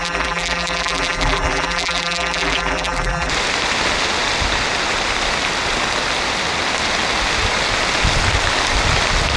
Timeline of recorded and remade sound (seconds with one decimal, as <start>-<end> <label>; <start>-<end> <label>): 0.0-3.3 remade; 3.3-9.4 recorded

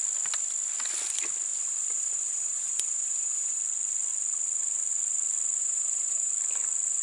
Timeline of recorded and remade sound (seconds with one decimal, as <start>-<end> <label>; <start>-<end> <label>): 0.0-1.5 recorded; 1.5-3.6 remade; 3.6-5.6 recorded; 5.6-6.3 remade; 6.3-7.0 recorded